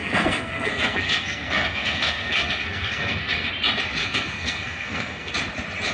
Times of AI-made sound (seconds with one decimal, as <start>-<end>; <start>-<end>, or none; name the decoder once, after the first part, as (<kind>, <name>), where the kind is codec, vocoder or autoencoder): 0.0-3.5 (codec, SNAC); 4.0-5.3